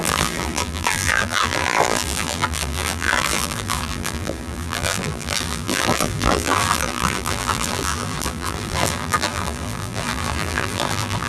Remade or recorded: remade